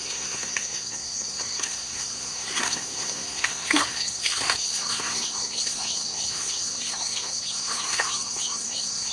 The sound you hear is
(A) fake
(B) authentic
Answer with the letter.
A